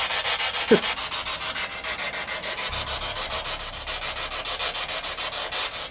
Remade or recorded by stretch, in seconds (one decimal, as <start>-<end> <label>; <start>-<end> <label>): 0.0-2.4 recorded; 2.4-3.7 remade; 3.7-5.9 recorded